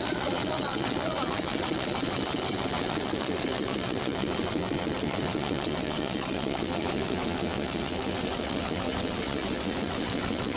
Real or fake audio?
fake